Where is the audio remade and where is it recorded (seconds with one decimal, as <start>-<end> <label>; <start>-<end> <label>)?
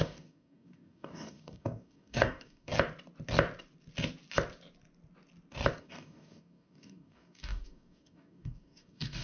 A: 0.0-2.7 remade; 2.7-5.8 recorded; 5.8-9.2 remade